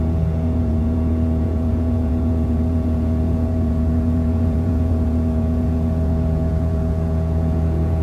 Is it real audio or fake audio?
fake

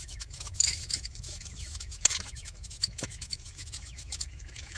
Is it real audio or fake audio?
fake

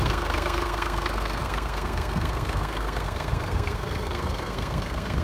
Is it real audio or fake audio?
fake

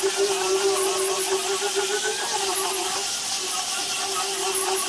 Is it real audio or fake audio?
real